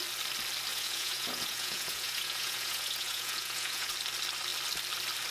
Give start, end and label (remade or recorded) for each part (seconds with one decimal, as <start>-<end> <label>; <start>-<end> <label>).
0.0-0.7 recorded; 0.7-3.9 remade; 3.9-5.3 recorded